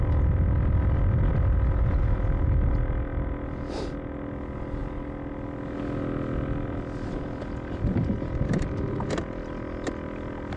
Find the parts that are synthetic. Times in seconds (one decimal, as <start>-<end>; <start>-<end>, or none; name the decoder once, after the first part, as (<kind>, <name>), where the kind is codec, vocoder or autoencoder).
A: none